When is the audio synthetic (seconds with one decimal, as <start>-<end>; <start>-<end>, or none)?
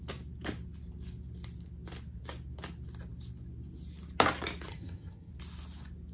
4.7-5.3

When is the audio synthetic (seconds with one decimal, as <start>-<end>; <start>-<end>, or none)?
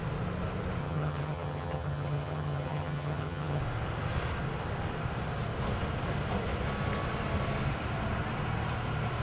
0.8-3.6